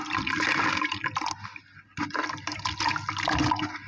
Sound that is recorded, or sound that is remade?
recorded